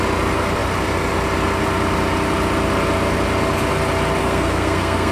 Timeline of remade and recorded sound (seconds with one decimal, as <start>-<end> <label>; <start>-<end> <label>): 0.0-4.2 recorded; 4.2-5.1 remade